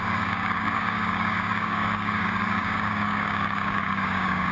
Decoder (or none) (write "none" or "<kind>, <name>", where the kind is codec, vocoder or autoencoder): codec, DAC